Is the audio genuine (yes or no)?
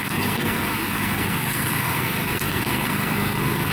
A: no